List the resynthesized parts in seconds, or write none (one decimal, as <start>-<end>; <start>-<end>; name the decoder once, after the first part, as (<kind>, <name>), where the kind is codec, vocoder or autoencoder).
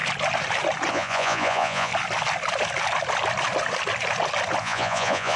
0.9-1.9 (vocoder, Vocos); 4.6-5.4